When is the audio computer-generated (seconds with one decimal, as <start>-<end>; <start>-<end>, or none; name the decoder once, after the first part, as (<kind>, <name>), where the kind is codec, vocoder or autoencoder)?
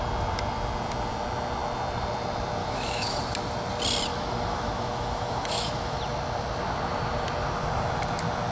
2.6-3.2 (autoencoder, DAC-VAE); 4.1-6.0